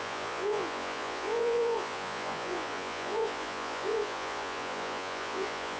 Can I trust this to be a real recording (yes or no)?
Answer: no